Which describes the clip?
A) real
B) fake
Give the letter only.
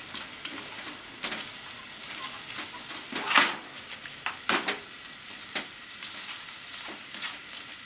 A